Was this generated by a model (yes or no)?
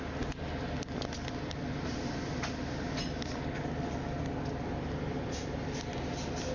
no